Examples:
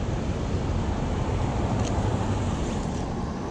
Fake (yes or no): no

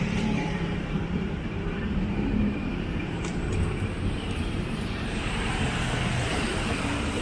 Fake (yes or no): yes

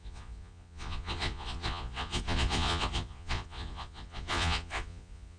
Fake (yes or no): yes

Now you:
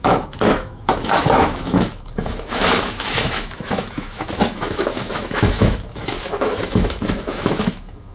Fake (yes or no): yes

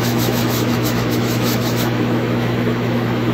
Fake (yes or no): yes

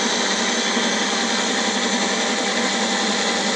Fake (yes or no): no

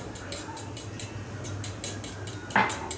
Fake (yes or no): no